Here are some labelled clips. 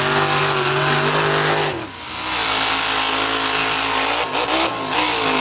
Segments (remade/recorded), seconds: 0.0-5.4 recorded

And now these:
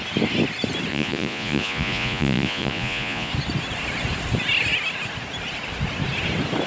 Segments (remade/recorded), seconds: 0.0-0.9 recorded; 0.9-3.3 remade; 3.3-6.7 recorded

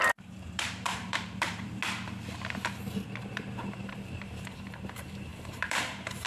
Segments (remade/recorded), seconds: 0.0-1.8 remade; 1.8-3.2 recorded; 3.2-6.3 remade